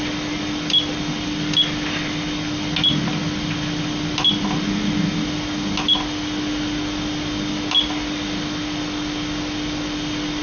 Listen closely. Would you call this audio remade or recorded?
recorded